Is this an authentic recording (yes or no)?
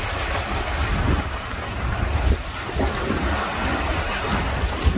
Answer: yes